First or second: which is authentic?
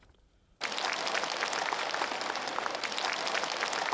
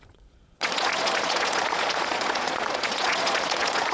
first